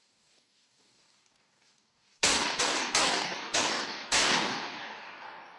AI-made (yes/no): yes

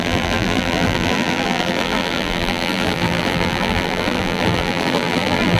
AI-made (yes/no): yes